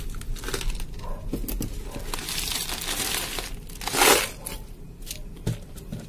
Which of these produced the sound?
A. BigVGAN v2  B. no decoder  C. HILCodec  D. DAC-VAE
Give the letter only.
B